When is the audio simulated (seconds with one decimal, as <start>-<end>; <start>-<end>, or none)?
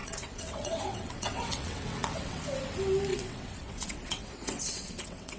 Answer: 0.0-2.4; 3.1-5.4